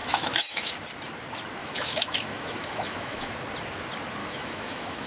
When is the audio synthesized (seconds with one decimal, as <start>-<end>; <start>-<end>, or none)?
0.0-0.7; 1.6-3.3; 4.2-5.1